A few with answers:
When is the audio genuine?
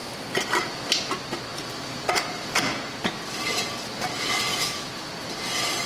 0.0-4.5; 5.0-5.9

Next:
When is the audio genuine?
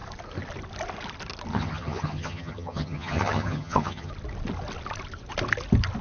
0.0-1.5; 4.1-6.0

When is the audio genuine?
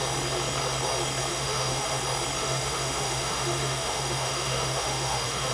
0.0-1.3; 2.0-2.4